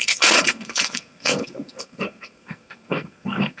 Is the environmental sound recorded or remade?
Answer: remade